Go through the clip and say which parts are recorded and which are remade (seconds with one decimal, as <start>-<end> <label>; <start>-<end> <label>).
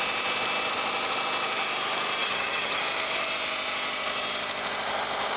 0.0-2.2 recorded; 2.2-2.8 remade; 2.8-5.4 recorded